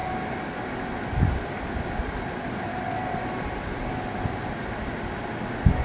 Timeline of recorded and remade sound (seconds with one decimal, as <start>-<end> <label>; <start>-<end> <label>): 0.0-5.8 recorded